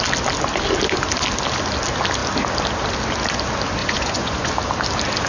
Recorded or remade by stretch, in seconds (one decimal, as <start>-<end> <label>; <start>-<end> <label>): 0.0-3.8 recorded; 3.8-4.5 remade; 4.5-5.3 recorded